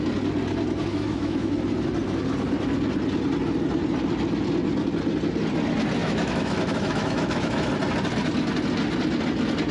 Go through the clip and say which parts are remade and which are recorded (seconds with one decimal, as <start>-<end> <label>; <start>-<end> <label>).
0.0-0.9 recorded; 0.9-1.5 remade; 1.5-6.0 recorded; 6.0-7.7 remade; 7.7-9.7 recorded